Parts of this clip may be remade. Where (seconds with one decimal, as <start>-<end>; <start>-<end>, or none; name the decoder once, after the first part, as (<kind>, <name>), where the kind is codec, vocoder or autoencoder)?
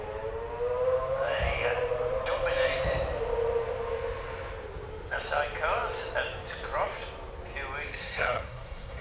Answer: 8.0-9.0 (codec, SNAC)